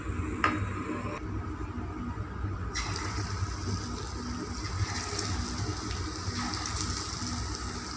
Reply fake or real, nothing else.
real